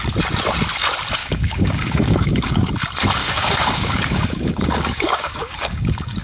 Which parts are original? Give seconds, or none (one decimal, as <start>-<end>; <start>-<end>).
0.0-1.2; 2.7-3.2